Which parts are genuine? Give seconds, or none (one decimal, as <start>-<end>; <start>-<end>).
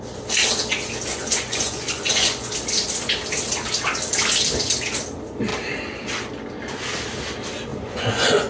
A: 0.0-1.1; 2.5-7.7